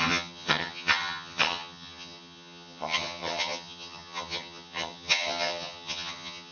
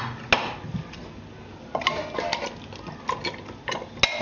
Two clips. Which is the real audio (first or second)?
second